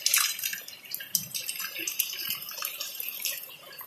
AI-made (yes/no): yes